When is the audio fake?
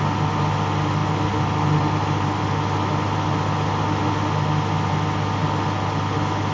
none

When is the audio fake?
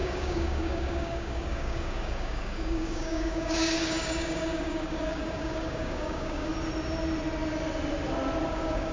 0.0-6.5 (codec, DAC); 8.5-8.9